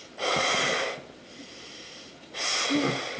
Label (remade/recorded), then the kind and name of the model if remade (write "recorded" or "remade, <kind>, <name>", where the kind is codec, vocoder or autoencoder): recorded